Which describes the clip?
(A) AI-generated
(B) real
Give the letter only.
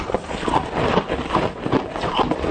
B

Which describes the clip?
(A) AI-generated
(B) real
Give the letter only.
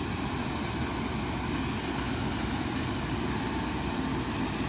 B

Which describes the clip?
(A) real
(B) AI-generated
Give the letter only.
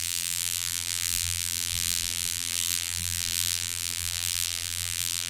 B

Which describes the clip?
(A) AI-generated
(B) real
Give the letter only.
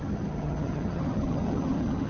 A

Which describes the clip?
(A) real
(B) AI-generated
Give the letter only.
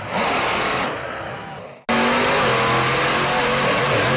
A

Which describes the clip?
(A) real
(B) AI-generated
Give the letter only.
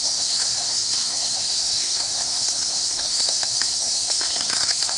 B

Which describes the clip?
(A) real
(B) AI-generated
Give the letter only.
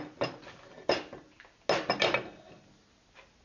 A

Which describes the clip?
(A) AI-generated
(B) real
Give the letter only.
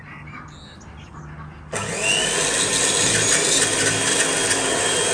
B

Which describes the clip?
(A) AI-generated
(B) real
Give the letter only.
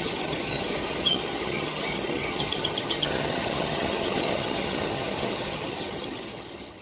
A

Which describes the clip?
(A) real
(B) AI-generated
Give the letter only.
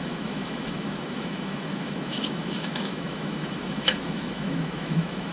B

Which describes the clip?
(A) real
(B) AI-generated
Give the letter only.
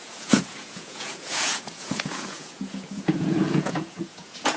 B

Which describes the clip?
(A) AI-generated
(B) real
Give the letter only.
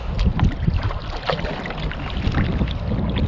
B